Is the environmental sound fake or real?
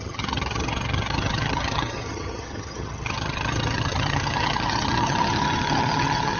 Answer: fake